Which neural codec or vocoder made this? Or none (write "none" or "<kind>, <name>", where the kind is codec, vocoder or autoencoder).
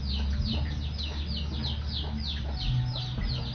none